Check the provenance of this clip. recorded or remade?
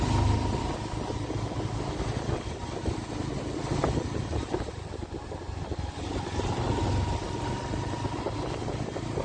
recorded